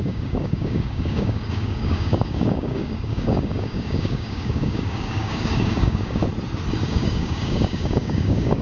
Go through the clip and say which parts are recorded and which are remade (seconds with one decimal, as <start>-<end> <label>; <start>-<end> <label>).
0.0-6.2 remade; 6.2-6.8 recorded; 6.8-8.6 remade